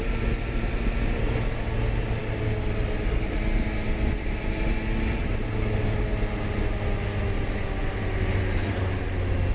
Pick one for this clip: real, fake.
real